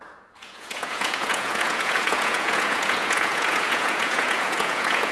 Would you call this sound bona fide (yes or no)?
no